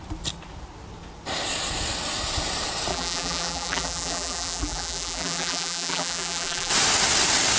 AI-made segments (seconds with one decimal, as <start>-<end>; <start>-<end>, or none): 2.9-6.7